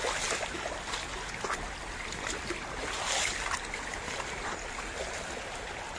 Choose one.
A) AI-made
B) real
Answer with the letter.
B